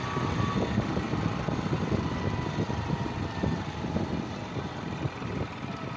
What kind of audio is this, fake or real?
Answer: real